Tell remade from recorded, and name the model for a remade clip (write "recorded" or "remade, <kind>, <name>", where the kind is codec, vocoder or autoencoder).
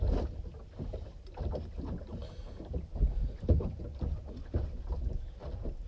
recorded